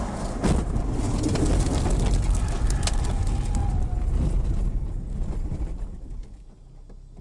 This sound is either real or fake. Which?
real